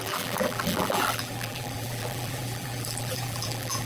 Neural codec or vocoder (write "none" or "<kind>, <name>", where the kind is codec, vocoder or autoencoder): vocoder, BigVGAN v2